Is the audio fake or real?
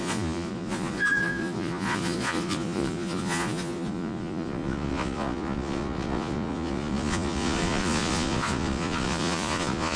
fake